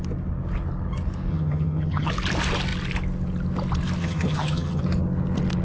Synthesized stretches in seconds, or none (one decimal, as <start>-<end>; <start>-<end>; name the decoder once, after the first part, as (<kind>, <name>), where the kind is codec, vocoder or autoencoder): 1.3-2.1 (vocoder, HiFi-GAN); 4.0-4.8